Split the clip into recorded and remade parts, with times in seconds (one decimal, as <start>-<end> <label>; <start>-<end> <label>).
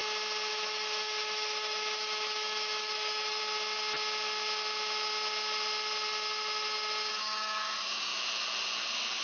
0.0-0.5 recorded; 0.5-3.4 remade; 3.4-7.1 recorded; 7.1-8.1 remade; 8.1-9.2 recorded